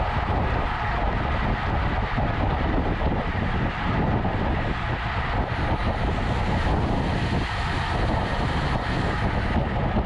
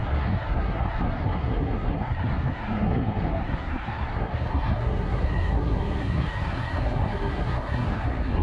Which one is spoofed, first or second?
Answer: second